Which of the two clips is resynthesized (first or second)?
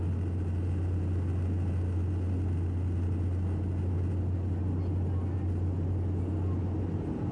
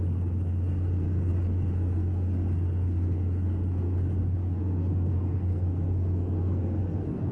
second